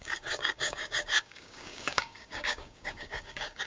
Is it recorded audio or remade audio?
remade